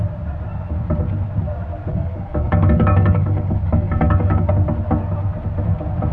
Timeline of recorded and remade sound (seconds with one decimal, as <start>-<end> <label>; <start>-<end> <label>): 0.0-1.9 recorded; 1.9-4.5 remade; 4.5-6.1 recorded